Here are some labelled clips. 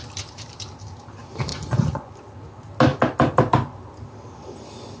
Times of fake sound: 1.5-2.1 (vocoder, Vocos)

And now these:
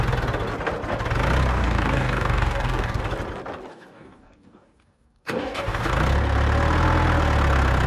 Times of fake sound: 1.5-3.0 (codec, DAC); 3.7-5.9

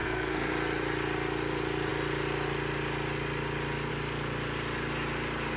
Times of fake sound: 0.0-0.5 (codec, SNAC)

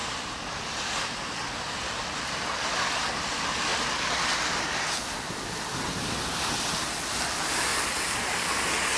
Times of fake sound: none

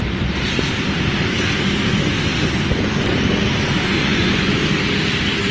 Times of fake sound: 4.0-4.6 (vocoder, Vocos)